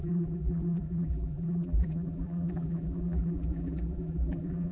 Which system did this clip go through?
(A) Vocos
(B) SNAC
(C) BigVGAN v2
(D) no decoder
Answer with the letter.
C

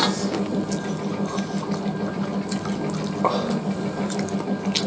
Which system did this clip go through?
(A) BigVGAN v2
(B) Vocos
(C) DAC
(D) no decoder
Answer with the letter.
D